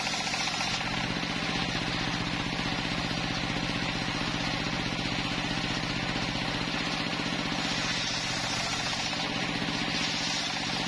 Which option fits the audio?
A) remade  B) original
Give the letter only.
B